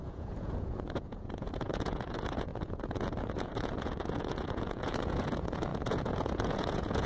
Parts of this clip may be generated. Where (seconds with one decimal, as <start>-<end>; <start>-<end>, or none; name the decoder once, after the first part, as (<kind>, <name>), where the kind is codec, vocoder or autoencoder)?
0.0-7.1 (vocoder, Vocos)